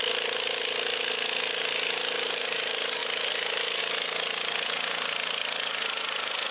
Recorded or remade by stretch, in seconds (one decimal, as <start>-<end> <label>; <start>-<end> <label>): 0.0-6.5 recorded